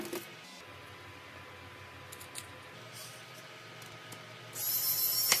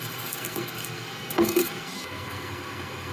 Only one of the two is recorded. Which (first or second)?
first